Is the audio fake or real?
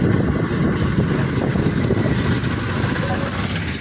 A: real